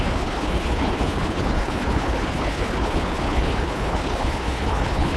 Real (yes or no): no